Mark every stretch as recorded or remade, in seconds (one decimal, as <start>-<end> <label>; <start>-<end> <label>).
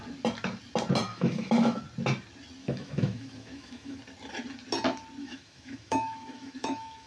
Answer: 0.0-1.1 recorded; 1.1-1.8 remade; 1.8-2.6 recorded; 2.6-4.0 remade; 4.0-5.2 recorded; 5.2-7.1 remade